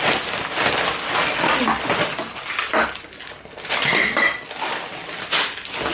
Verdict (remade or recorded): recorded